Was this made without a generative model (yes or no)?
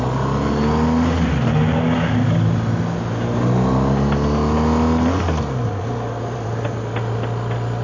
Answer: yes